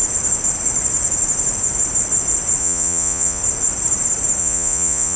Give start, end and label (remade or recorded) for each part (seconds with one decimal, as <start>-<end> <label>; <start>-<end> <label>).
0.0-2.6 recorded; 2.6-3.4 remade; 3.4-4.4 recorded; 4.4-5.2 remade